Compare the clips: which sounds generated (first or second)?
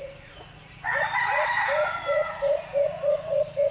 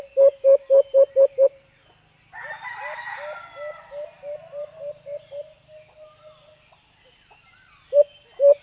first